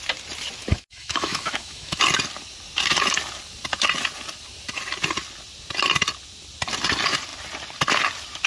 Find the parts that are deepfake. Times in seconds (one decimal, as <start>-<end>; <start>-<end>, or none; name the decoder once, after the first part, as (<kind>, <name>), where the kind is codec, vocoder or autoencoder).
0.7-2.0 (autoencoder, DAC-VAE)